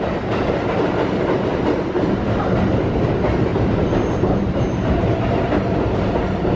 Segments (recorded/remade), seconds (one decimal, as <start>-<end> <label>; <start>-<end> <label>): 0.0-1.5 recorded; 1.5-2.3 remade; 2.3-3.5 recorded; 3.5-5.8 remade; 5.8-6.6 recorded